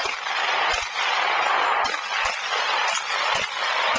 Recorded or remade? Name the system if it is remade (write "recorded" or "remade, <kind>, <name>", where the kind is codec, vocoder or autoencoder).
recorded